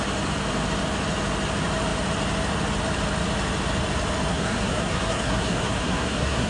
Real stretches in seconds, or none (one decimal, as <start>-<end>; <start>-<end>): 0.0-4.3

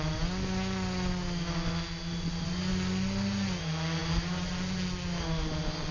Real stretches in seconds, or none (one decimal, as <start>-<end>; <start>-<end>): 0.0-5.9

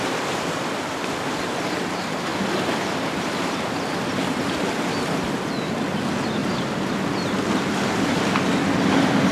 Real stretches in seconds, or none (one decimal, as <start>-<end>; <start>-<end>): 0.0-6.4; 7.0-9.3

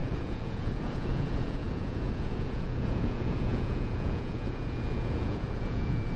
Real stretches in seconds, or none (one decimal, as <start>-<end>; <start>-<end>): none

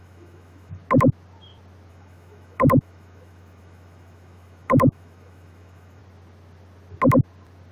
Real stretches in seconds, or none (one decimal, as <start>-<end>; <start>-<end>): 0.8-1.9; 6.0-7.7

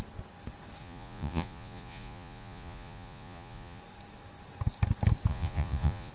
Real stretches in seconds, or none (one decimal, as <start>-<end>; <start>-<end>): 0.0-0.8; 3.8-5.3